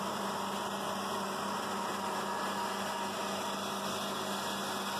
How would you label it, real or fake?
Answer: real